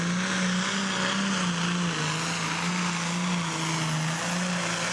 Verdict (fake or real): real